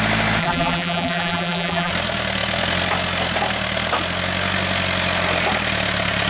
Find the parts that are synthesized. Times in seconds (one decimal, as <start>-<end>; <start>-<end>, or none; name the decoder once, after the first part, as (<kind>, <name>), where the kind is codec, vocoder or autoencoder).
0.4-1.9 (vocoder, BigVGAN v2)